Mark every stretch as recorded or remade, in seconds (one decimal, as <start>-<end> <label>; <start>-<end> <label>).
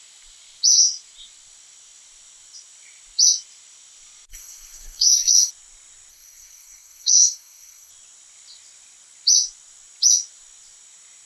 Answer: 0.0-4.3 recorded; 4.3-5.5 remade; 5.5-6.1 recorded; 6.1-7.9 remade; 7.9-11.3 recorded